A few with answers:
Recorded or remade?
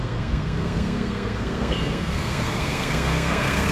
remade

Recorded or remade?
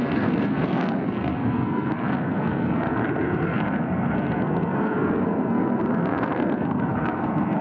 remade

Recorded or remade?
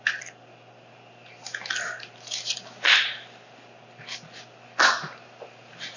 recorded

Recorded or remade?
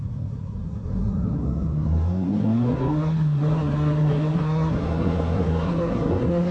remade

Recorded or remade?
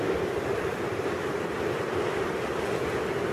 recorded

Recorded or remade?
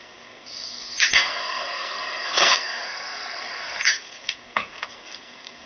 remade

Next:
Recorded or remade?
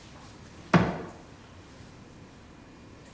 recorded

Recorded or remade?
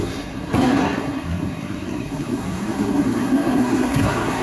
remade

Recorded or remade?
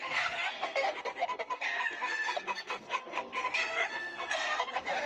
remade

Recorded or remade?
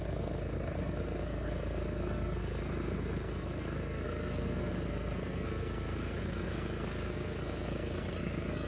remade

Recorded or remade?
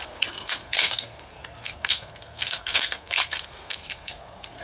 remade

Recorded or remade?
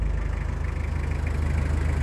recorded